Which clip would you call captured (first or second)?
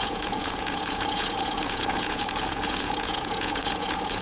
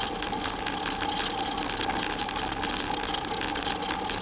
second